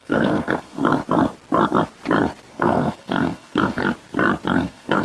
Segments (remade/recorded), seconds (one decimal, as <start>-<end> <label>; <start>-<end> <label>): 0.0-1.0 remade; 1.0-2.5 recorded; 2.5-3.8 remade; 3.8-4.5 recorded; 4.5-5.0 remade